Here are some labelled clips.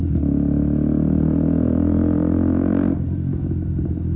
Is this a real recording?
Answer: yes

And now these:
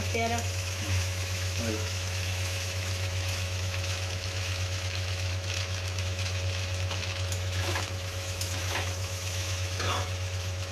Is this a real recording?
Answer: no